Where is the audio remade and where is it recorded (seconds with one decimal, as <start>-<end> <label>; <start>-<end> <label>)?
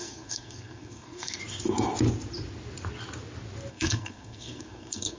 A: 0.0-1.4 remade; 1.4-3.7 recorded; 3.7-5.2 remade